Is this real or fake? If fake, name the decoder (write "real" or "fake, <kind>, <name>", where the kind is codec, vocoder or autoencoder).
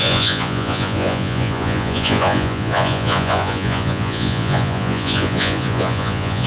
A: fake, vocoder, Vocos